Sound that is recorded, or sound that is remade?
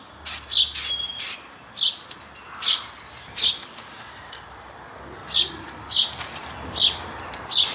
recorded